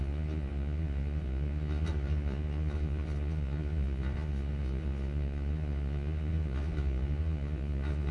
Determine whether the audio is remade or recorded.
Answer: remade